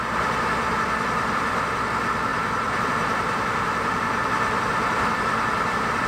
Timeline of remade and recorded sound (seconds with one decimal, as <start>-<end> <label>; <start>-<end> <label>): 0.0-2.3 remade; 2.3-2.9 recorded; 2.9-6.1 remade